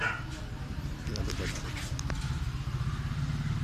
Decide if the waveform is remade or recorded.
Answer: recorded